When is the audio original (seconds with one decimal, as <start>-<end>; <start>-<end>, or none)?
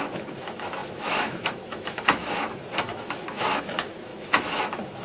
none